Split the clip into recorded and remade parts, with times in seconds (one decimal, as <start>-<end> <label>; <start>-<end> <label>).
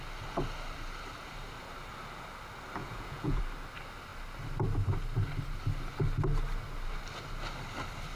0.0-2.8 recorded; 2.8-3.4 remade; 3.4-8.2 recorded